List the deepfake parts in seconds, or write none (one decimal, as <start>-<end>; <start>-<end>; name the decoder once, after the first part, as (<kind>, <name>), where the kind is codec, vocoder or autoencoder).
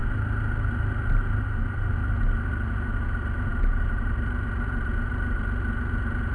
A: none